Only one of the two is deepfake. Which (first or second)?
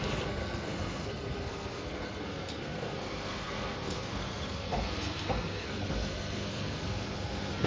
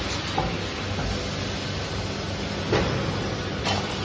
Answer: first